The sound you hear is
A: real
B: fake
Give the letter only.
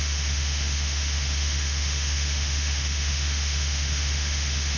B